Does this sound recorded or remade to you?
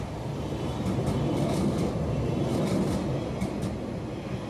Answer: recorded